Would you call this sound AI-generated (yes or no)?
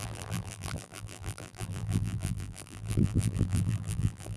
yes